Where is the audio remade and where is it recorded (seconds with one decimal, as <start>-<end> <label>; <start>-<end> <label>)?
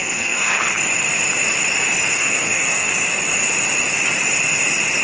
0.0-0.6 remade; 0.6-2.1 recorded; 2.1-2.9 remade; 2.9-5.0 recorded